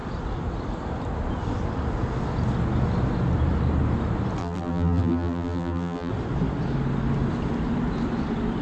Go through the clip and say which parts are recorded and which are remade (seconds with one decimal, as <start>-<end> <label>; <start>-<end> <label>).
0.0-4.4 recorded; 4.4-6.1 remade; 6.1-8.6 recorded